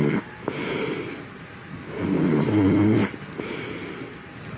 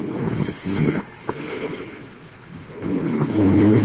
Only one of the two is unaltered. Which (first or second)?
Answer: first